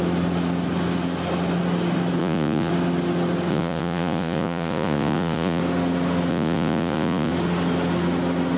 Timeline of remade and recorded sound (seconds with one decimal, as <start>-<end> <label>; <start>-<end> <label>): 0.0-2.2 recorded; 2.2-2.7 remade; 2.7-3.5 recorded; 3.5-5.6 remade; 5.6-6.3 recorded; 6.3-7.3 remade; 7.3-8.6 recorded